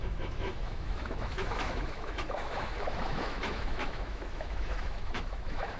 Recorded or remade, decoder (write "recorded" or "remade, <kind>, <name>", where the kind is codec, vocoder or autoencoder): remade, autoencoder, DAC-VAE